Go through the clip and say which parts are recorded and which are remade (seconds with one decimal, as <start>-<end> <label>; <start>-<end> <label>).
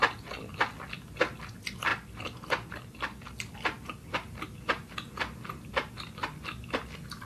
0.0-7.2 recorded